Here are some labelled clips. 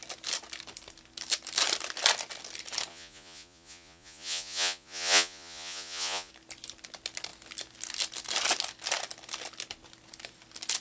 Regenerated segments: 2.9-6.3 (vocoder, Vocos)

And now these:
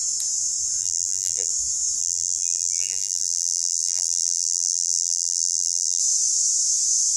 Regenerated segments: 0.8-1.5 (vocoder, BigVGAN v2); 2.0-6.0

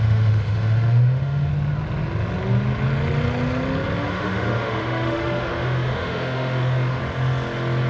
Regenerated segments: 0.0-1.5 (autoencoder, DAC-VAE); 4.1-7.0

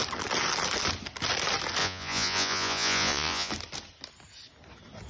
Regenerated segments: 1.8-3.5 (vocoder, Vocos)

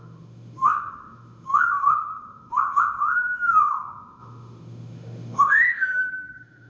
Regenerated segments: 0.0-6.7 (autoencoder, DAC-VAE)